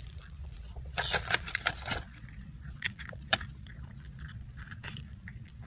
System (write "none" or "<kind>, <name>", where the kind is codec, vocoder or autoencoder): vocoder, Vocos